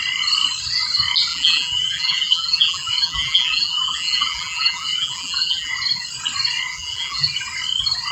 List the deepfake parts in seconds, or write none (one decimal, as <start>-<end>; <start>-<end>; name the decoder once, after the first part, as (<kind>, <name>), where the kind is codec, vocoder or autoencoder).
1.3-5.7 (vocoder, BigVGAN v2); 6.7-7.3